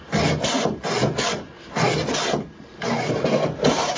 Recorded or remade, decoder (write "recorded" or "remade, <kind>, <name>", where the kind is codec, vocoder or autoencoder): recorded